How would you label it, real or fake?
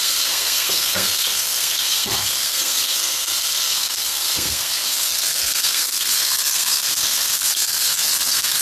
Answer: fake